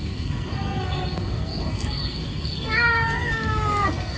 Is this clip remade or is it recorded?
remade